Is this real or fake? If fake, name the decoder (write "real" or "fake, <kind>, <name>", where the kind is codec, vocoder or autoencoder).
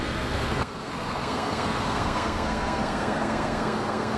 fake, codec, SNAC